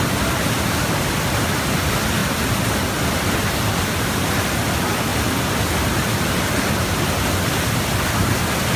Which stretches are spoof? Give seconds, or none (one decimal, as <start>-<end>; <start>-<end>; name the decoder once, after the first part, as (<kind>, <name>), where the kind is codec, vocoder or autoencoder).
none

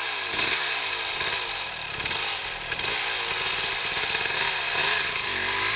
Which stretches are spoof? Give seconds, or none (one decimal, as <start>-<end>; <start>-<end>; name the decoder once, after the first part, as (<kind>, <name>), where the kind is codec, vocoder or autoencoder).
0.7-2.4 (vocoder, BigVGAN v2); 3.5-5.8

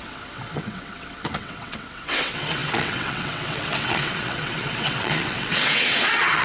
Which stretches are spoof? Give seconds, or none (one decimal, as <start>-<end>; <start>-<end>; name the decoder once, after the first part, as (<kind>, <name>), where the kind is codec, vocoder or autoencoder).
0.0-6.4 (vocoder, WaveNeXt)

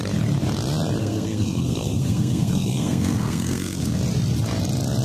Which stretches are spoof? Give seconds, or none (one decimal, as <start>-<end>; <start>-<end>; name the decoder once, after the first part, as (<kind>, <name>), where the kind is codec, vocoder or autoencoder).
1.0-4.0 (codec, SNAC)